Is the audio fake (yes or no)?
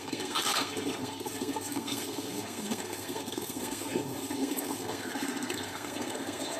yes